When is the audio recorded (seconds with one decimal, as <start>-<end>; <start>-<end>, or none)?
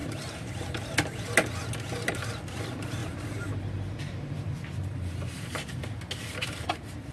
0.8-3.0; 5.7-7.1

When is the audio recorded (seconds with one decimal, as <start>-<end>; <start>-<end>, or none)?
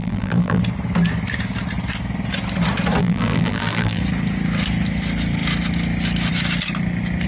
0.6-3.0; 4.0-7.3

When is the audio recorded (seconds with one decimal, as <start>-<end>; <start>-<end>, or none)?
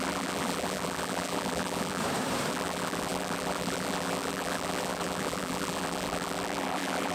2.0-2.5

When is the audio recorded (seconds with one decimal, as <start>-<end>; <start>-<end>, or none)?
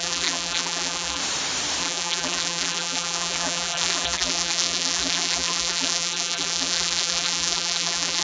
1.2-1.8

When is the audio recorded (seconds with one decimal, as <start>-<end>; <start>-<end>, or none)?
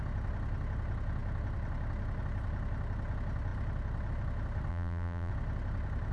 0.0-4.7; 5.3-6.1